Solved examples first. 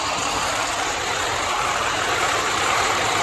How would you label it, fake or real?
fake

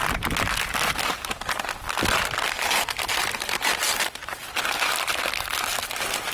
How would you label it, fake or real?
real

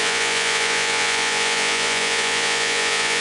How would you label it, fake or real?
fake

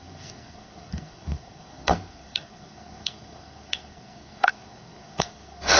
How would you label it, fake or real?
fake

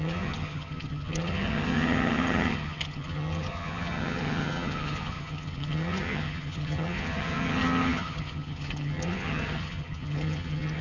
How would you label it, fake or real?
fake